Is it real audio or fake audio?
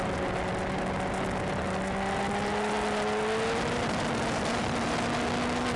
real